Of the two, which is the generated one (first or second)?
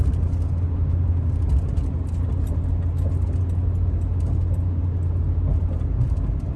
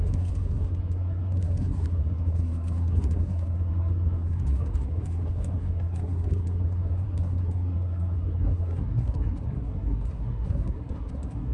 second